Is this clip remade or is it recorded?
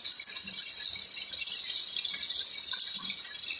recorded